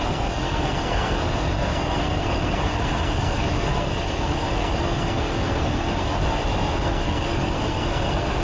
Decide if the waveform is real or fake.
fake